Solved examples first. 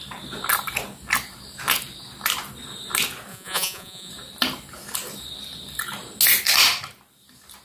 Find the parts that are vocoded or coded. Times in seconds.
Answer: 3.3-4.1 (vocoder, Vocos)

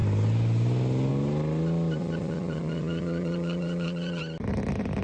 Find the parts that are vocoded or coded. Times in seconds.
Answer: 2.0-4.2 (vocoder, Vocos)

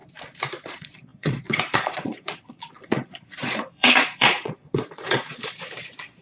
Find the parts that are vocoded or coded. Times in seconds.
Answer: 0.7-6.2 (vocoder, Vocos)

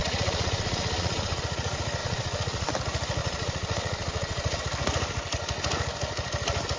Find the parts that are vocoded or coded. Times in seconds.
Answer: 0.0-1.4 (vocoder, Vocos); 2.0-2.7; 3.2-4.6

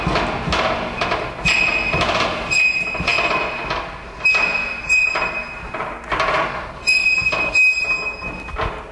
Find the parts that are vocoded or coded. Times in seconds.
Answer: none

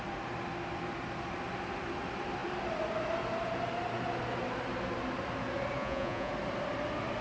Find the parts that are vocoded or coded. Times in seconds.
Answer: 5.8-6.3 (vocoder, Vocos)

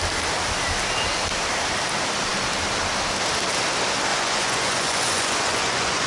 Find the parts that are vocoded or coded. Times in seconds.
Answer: 4.1-6.1 (vocoder, Vocos)